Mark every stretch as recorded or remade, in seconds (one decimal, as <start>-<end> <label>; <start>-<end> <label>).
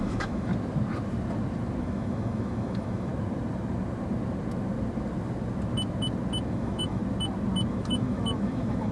0.0-0.5 remade; 0.5-1.8 recorded; 1.8-3.1 remade; 3.1-6.5 recorded; 6.5-7.0 remade; 7.0-7.7 recorded; 7.7-8.9 remade